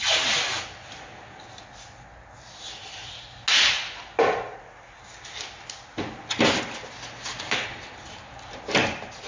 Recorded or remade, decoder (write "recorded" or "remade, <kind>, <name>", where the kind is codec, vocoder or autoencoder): recorded